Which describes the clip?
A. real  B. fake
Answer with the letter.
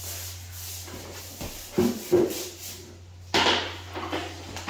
A